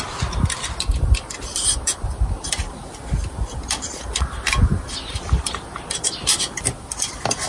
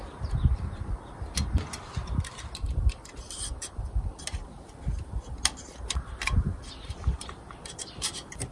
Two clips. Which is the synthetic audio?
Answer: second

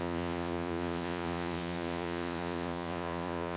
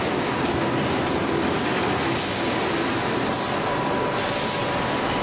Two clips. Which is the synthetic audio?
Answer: first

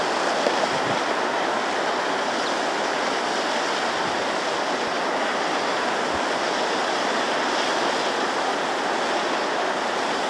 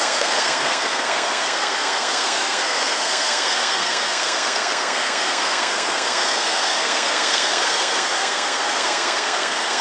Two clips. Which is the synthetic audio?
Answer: second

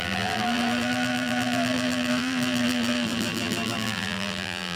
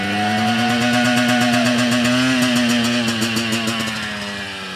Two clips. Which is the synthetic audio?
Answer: first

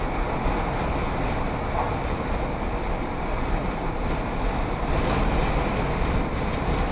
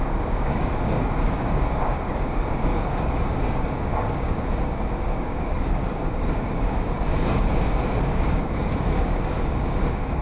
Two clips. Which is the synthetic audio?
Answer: second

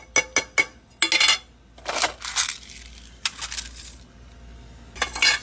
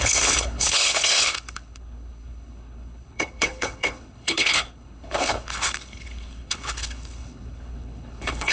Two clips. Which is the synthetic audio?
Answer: second